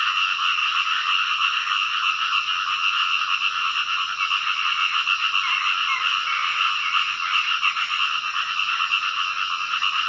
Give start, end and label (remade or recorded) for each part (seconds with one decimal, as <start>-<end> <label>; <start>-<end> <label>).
0.0-10.1 recorded